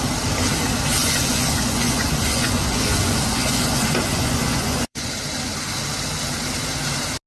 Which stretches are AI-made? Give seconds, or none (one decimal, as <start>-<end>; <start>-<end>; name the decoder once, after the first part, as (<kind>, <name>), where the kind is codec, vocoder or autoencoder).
1.0-5.1 (vocoder, Vocos)